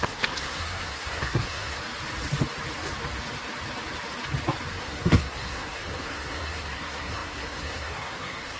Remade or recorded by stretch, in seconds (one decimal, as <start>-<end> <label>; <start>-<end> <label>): 0.0-1.8 remade; 1.8-4.8 recorded; 4.8-8.6 remade